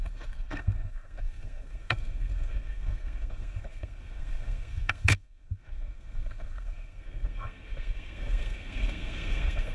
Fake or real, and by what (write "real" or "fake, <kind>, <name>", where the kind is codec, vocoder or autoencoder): fake, codec, SNAC